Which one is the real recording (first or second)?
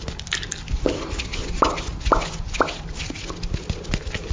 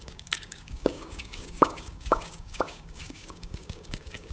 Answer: first